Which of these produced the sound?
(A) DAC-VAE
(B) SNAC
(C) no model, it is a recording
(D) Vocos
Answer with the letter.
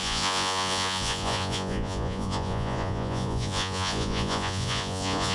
D